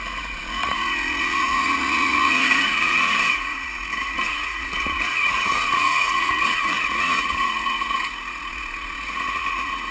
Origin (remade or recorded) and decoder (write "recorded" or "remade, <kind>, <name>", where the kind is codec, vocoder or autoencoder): remade, vocoder, Vocos